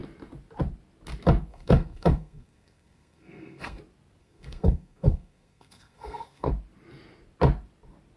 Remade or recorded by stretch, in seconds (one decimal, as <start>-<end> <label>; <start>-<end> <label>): 0.0-1.5 recorded; 1.5-3.8 remade; 3.8-4.2 recorded; 4.2-6.5 remade; 6.5-8.2 recorded